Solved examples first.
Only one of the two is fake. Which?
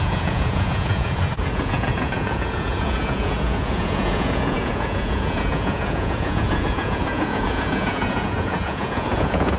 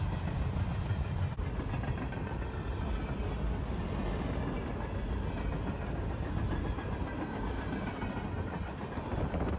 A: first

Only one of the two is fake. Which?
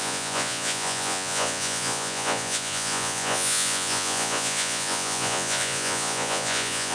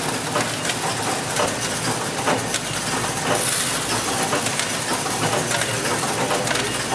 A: first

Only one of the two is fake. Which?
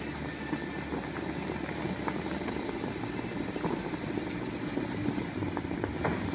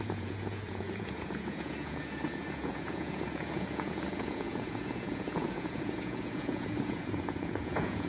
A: second